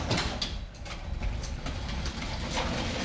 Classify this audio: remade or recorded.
recorded